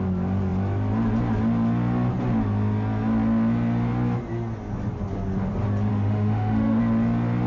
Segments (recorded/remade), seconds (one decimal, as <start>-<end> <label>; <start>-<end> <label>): 0.0-5.9 recorded; 5.9-6.8 remade; 6.8-7.5 recorded